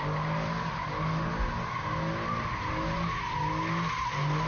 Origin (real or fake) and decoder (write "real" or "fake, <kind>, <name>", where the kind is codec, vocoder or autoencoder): real